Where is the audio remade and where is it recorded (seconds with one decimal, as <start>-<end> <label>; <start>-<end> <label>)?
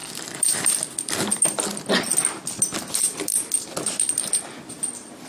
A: 0.0-1.9 remade; 1.9-5.3 recorded